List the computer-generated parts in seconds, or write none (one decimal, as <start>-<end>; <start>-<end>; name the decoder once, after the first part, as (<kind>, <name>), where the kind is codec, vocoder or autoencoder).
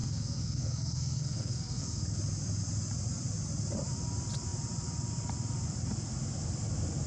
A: 0.0-2.2 (codec, SNAC)